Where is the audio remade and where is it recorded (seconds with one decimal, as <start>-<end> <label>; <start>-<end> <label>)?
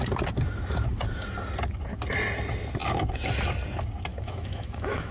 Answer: 0.0-4.1 recorded; 4.1-5.1 remade